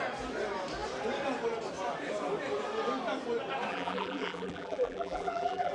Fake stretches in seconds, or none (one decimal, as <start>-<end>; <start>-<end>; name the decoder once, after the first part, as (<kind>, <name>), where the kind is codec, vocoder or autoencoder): 3.7-5.7 (vocoder, BigVGAN v2)